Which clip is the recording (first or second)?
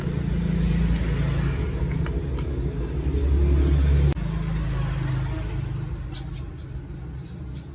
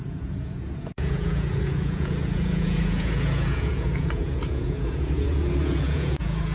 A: first